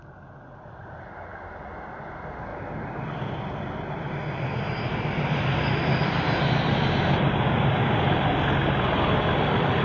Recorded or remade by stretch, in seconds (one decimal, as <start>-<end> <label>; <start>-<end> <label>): 0.0-9.8 recorded